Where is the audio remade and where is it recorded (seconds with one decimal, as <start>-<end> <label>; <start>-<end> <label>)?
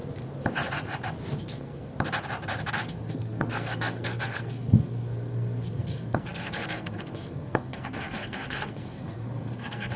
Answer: 0.0-1.4 recorded; 1.4-1.9 remade; 1.9-2.7 recorded; 2.7-10.0 remade